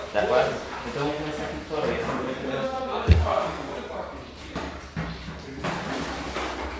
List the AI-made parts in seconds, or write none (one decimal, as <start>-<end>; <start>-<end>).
2.2-3.7